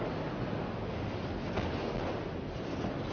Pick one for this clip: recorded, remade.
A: recorded